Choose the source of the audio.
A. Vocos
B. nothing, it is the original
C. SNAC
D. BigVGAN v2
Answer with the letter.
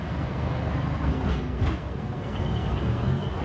C